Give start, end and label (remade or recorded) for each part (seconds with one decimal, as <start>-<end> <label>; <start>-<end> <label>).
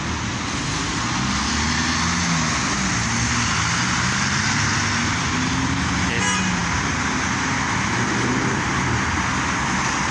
0.0-10.1 recorded